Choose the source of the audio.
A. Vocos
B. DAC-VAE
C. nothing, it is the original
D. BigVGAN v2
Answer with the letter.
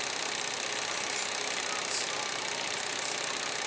C